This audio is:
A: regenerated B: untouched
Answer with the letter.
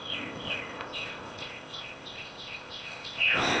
A